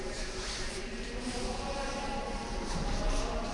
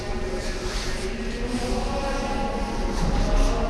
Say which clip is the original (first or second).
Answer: second